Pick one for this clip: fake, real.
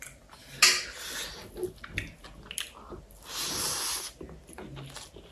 real